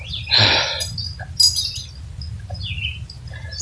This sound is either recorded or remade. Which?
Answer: recorded